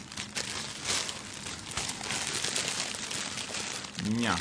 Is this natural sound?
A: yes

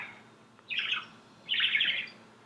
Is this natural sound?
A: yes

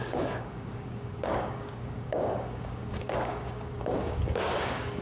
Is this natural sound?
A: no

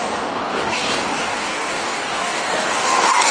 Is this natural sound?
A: no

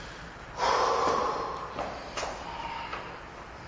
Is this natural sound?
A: yes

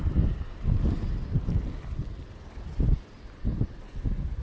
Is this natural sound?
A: yes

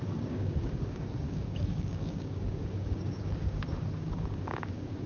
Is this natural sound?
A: no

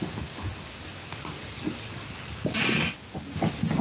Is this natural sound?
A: yes